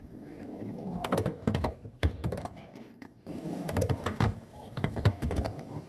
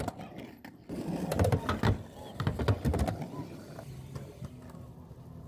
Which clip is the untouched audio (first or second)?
second